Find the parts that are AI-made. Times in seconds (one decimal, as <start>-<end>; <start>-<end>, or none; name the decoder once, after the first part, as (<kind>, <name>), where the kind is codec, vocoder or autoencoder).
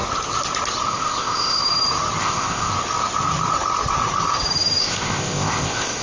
0.9-1.6 (codec, ZipCodec); 2.2-2.7; 4.8-6.0